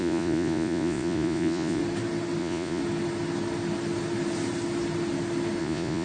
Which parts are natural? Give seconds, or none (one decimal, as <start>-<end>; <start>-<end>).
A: 1.8-2.4; 2.8-5.6